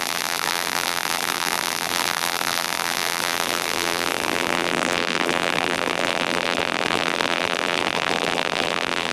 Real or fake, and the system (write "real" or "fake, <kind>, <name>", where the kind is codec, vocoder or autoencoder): fake, vocoder, BigVGAN v2